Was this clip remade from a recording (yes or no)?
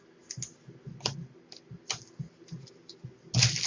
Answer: no